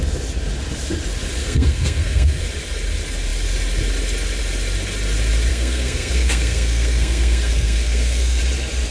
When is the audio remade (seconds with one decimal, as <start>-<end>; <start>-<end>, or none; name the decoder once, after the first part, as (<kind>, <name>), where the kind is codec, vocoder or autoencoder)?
1.4-2.4 (codec, SNAC); 5.5-8.4